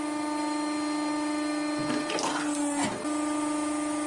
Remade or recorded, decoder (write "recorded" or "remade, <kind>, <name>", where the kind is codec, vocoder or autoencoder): recorded